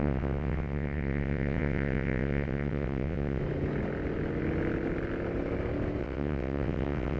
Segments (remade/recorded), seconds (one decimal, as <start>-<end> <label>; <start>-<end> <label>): 0.0-3.4 remade; 3.4-6.0 recorded; 6.0-7.2 remade